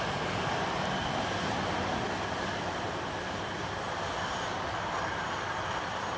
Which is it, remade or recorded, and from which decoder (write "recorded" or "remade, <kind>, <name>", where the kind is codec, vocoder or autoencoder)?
recorded